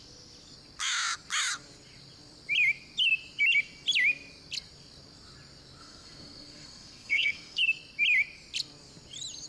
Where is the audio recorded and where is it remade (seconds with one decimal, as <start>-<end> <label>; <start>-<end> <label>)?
0.0-5.8 recorded; 5.8-7.6 remade; 7.6-9.5 recorded